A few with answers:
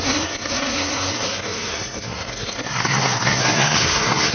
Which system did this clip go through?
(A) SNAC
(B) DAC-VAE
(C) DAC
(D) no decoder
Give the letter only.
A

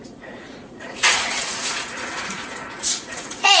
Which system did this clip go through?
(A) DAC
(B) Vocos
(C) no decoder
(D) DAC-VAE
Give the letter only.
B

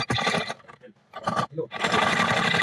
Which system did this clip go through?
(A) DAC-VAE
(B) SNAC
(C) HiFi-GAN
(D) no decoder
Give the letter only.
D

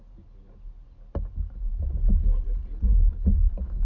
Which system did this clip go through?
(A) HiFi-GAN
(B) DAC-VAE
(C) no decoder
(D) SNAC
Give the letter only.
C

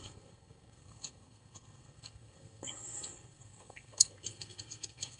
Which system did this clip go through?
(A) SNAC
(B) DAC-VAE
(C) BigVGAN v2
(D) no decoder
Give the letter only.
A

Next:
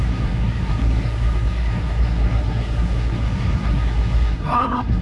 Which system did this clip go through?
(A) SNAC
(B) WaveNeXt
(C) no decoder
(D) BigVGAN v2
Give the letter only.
A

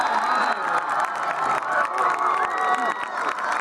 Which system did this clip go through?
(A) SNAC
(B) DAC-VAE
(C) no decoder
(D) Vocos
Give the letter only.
C